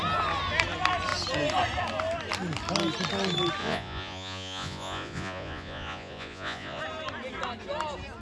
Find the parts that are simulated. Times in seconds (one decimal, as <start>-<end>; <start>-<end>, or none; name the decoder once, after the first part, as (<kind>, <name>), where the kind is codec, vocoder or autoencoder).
3.6-6.8 (vocoder, Vocos)